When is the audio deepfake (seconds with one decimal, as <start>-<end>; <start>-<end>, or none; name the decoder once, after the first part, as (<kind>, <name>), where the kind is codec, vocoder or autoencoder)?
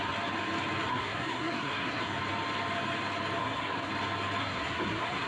0.9-2.1 (codec, SNAC); 3.4-3.9; 4.4-5.3